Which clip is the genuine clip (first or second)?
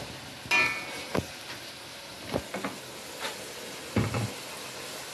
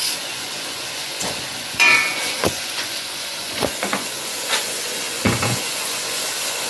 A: first